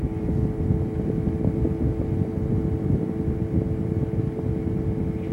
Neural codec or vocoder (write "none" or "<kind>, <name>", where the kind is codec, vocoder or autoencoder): none